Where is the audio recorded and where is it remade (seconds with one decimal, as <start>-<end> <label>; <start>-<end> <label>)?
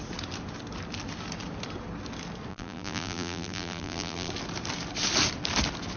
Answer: 0.0-2.5 recorded; 2.5-4.3 remade; 4.3-6.0 recorded